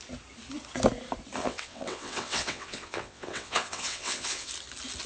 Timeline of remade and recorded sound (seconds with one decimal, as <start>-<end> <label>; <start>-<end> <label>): 0.0-1.4 recorded; 1.4-4.5 remade; 4.5-5.1 recorded